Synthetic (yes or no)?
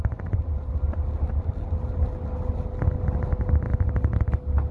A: no